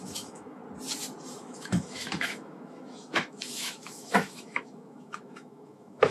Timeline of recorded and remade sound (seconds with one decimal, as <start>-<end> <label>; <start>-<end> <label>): 0.0-0.6 remade; 0.6-1.4 recorded; 1.4-6.1 remade